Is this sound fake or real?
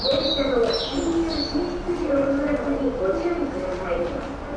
real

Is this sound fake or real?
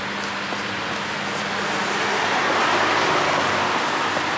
real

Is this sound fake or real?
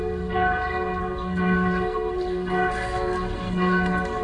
fake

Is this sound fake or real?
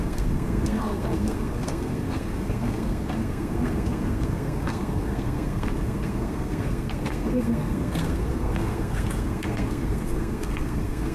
fake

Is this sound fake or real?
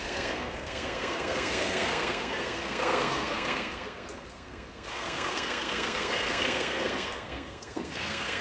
fake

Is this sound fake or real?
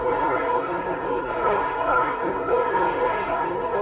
fake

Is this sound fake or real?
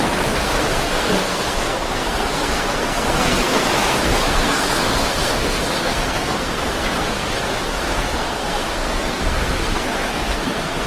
fake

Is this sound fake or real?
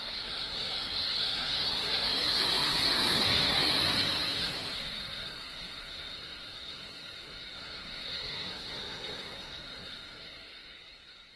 fake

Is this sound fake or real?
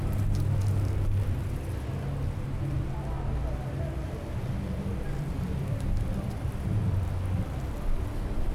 real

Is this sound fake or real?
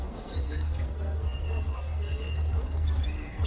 fake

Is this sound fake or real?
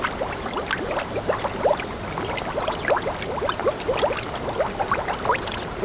real